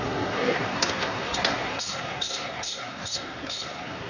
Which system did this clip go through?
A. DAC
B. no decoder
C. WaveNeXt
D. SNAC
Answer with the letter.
D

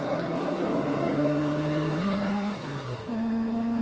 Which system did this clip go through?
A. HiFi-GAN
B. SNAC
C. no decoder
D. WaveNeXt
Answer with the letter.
B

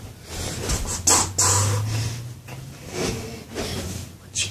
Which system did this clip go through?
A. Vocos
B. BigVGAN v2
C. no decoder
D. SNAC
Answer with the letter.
C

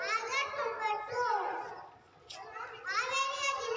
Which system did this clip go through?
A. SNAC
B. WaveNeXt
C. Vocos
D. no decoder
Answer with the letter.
D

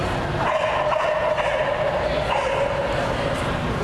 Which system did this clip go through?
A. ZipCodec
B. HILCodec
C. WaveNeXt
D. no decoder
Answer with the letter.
D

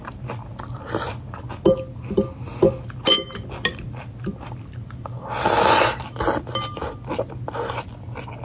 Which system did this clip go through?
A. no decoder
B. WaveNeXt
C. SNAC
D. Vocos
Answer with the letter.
A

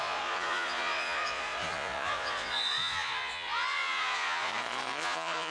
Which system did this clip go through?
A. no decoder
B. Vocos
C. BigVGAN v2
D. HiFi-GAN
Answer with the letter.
B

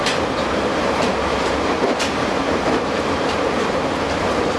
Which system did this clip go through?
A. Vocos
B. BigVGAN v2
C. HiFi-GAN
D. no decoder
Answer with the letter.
B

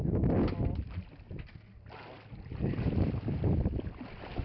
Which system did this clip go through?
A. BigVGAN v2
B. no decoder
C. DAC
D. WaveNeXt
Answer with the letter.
B